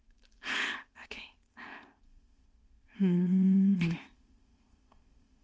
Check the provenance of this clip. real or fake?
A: fake